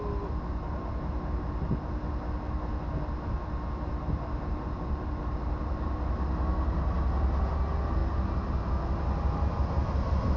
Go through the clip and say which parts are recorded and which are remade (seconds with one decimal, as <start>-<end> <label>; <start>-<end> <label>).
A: 0.0-10.4 recorded